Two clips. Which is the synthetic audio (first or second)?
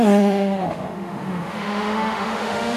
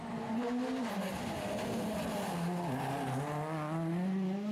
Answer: first